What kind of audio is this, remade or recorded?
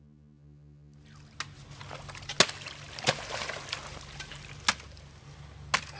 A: recorded